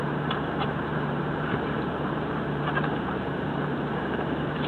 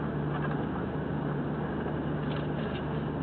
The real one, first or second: second